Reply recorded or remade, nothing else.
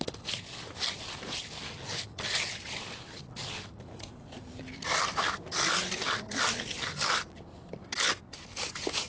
recorded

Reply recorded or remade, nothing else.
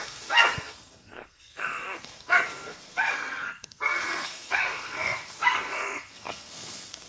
remade